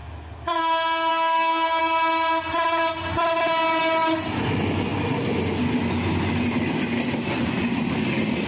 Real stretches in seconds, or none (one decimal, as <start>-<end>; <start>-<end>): 0.0-1.1; 1.8-8.5